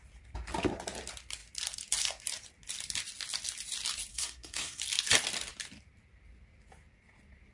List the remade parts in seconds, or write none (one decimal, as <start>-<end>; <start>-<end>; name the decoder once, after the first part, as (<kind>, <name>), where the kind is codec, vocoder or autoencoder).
4.1-4.8 (codec, SNAC)